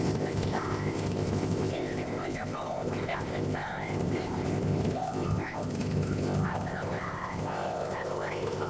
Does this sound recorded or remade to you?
remade